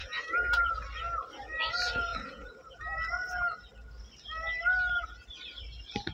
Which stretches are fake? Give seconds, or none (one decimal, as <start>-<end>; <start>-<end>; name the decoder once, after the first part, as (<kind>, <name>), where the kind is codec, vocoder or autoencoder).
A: 0.0-0.7 (vocoder, Vocos); 2.1-2.8